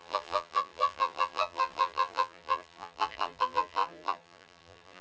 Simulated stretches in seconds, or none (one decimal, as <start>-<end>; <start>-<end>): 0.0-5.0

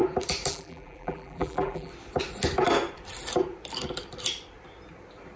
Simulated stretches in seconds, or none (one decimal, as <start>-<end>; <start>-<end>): 0.5-1.9

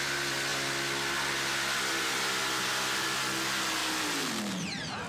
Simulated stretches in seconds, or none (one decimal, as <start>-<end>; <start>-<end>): none

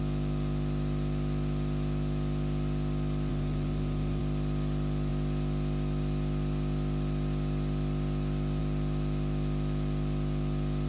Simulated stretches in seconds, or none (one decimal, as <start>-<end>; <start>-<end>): 3.3-4.2